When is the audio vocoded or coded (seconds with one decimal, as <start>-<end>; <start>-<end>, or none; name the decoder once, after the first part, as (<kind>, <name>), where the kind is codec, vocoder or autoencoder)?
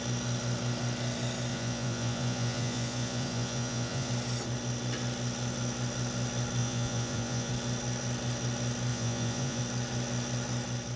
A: 1.5-4.1 (vocoder, Vocos); 6.6-7.5; 8.9-9.6